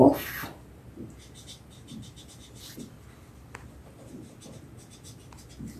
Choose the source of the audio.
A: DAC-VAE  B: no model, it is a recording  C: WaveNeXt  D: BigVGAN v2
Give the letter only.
B